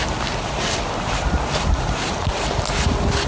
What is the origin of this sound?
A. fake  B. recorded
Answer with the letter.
B